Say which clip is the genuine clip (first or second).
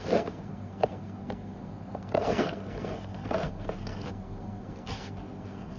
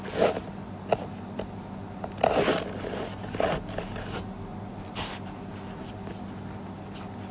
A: second